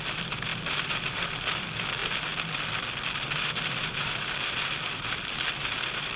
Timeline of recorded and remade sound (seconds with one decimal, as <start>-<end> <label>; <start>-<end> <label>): 0.0-6.2 recorded

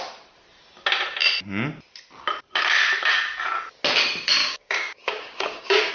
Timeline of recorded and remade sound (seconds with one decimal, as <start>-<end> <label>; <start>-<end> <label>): 0.0-4.4 recorded; 4.4-5.9 remade

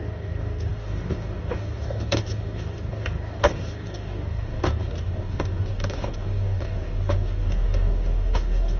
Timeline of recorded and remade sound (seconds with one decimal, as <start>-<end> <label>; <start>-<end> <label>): 0.0-8.8 remade